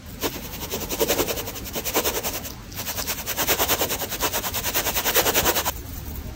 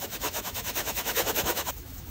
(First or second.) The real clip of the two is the first